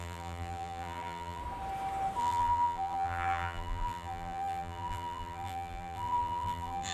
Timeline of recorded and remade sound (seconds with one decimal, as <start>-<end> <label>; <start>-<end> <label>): 0.0-1.4 remade; 1.4-2.2 recorded; 2.2-6.9 remade